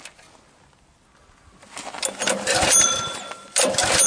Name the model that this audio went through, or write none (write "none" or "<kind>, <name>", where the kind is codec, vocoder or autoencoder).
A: none